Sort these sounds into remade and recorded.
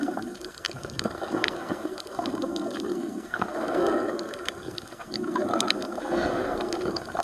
remade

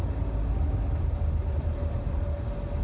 recorded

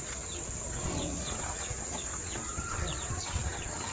remade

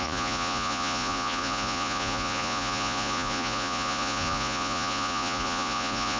remade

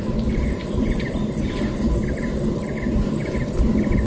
recorded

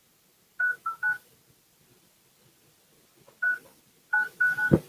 recorded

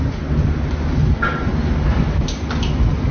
recorded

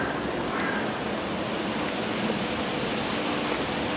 recorded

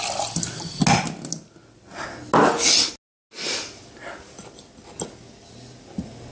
recorded